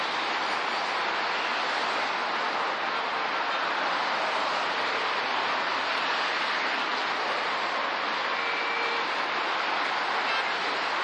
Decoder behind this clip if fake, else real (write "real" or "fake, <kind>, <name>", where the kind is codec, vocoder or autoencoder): real